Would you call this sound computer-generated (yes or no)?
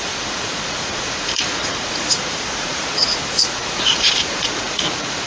yes